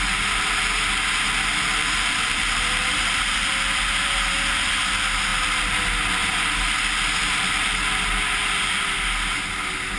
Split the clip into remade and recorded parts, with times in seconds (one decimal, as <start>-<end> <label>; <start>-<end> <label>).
0.0-1.8 recorded; 1.8-2.8 remade; 2.8-10.0 recorded